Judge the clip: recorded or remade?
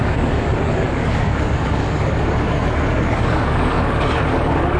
remade